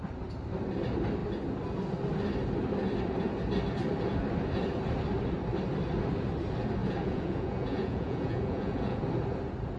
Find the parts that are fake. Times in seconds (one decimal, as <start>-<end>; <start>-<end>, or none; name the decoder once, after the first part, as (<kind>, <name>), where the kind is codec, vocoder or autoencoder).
6.8-9.0 (vocoder, Vocos)